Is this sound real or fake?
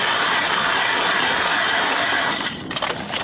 real